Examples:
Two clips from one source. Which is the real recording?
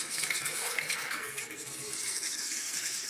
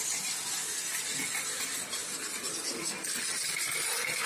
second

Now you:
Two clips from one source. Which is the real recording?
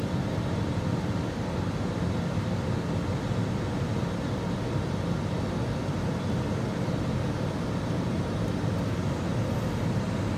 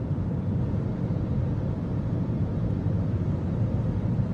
first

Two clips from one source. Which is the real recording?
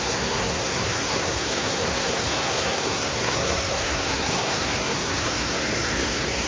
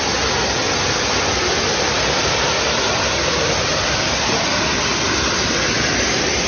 second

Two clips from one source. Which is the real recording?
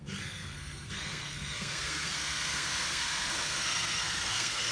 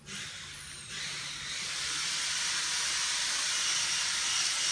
second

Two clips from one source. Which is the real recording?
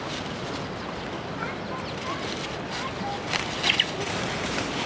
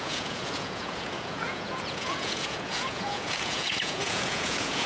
first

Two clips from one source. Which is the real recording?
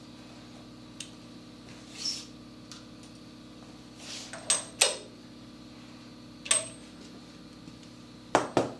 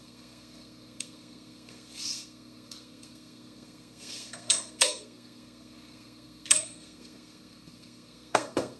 first